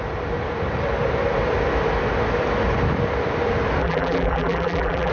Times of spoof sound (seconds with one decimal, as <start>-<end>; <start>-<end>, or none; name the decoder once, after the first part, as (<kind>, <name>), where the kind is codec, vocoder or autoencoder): 3.8-5.1 (vocoder, BigVGAN v2)